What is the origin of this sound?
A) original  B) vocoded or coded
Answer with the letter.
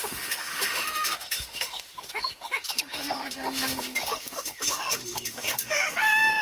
B